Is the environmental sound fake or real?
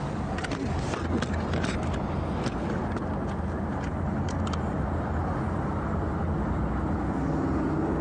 real